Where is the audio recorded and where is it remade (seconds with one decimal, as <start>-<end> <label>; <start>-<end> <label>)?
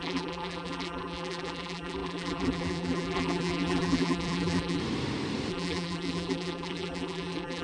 0.0-4.8 remade; 4.8-5.5 recorded; 5.5-7.6 remade